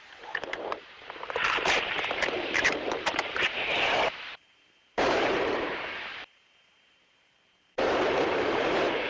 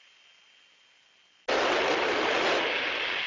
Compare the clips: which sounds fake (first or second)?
first